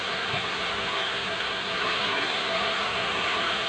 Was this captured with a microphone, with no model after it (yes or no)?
no